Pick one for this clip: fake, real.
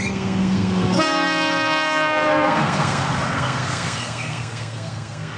fake